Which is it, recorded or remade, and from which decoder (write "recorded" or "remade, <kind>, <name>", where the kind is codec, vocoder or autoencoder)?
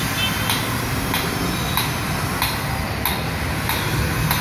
recorded